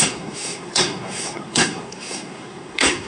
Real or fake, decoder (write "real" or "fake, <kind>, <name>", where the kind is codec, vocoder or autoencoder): fake, codec, SNAC